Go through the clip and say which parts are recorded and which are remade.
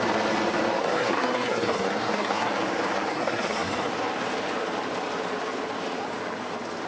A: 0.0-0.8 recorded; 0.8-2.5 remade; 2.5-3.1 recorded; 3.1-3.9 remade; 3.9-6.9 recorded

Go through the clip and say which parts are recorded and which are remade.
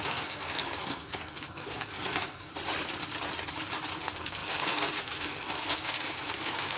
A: 0.0-2.5 remade; 2.5-4.0 recorded; 4.0-6.8 remade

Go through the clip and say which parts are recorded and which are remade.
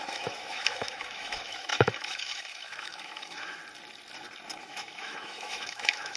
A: 0.0-3.6 remade; 3.6-4.6 recorded; 4.6-6.2 remade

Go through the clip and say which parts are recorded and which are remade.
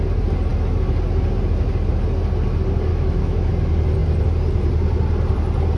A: 0.0-2.9 recorded; 2.9-3.5 remade; 3.5-5.8 recorded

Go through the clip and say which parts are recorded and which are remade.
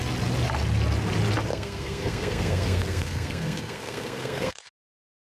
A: 0.0-1.5 recorded; 1.5-4.7 remade; 4.7-5.3 recorded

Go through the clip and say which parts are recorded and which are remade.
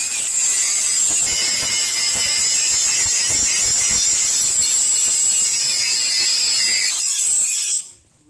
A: 0.0-5.5 recorded; 5.5-6.1 remade; 6.1-8.3 recorded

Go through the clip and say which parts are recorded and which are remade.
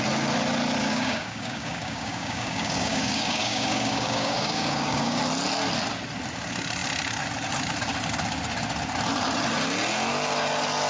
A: 0.0-0.8 recorded; 0.8-5.2 remade; 5.2-10.9 recorded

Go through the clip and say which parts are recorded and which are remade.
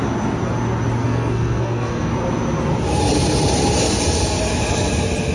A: 0.0-1.0 recorded; 1.0-2.1 remade; 2.1-5.3 recorded